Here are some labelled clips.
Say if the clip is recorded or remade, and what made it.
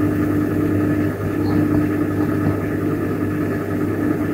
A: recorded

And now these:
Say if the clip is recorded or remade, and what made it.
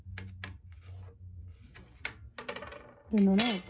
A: recorded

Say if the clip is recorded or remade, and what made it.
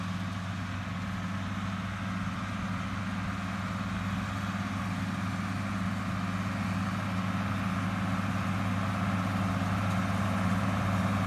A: recorded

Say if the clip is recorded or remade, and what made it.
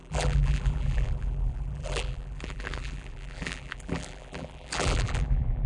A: remade, vocoder, BigVGAN v2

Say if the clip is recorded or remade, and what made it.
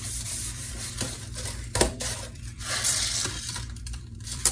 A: remade, vocoder, BigVGAN v2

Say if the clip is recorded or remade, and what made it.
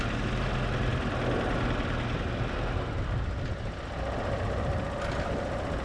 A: recorded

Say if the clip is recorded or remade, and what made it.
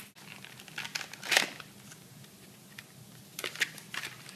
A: recorded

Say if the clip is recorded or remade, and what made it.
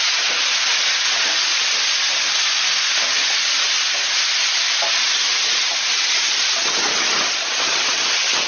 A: recorded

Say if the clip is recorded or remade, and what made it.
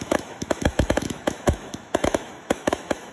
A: remade, autoencoder, DAC-VAE